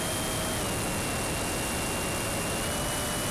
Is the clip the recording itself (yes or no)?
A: yes